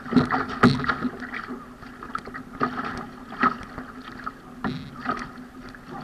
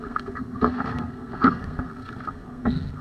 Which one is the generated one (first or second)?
second